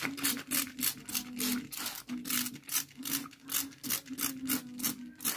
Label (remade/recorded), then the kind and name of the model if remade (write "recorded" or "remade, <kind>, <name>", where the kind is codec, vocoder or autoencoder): recorded